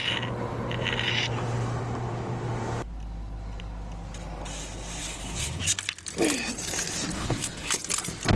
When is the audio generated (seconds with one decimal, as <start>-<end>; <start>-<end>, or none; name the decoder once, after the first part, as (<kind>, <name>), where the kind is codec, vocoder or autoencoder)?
5.0-5.6 (codec, HILCodec); 7.1-7.8